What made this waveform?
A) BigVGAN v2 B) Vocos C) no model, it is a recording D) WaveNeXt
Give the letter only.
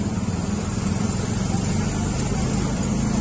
C